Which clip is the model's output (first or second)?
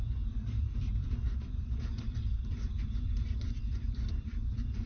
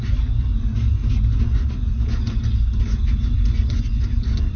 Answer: first